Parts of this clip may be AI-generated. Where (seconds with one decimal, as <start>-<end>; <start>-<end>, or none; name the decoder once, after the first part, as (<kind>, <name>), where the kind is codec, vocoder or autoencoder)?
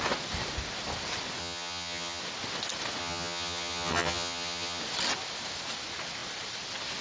1.4-2.2 (vocoder, HiFi-GAN); 3.0-4.8